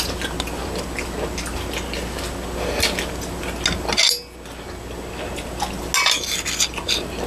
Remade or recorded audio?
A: recorded